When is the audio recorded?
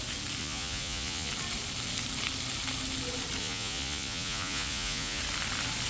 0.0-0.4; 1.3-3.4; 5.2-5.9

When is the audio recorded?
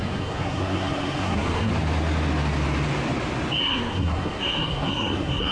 1.7-3.6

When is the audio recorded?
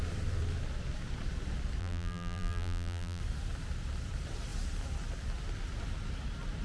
0.0-1.8; 3.2-6.6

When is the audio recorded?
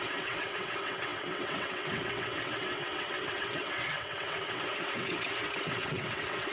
none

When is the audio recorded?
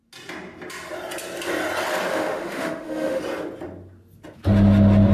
0.0-2.1; 3.2-5.1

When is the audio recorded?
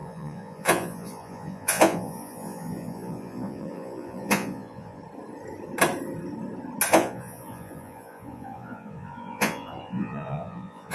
5.0-6.9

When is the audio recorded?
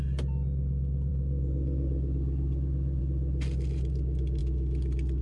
0.0-5.2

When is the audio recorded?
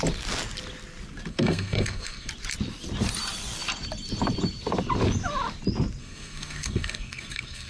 0.0-1.3; 2.3-6.0